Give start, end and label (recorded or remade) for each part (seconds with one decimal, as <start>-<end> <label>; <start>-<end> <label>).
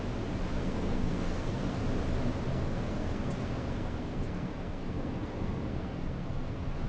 0.0-0.5 recorded; 0.5-1.8 remade; 1.8-2.5 recorded; 2.5-6.9 remade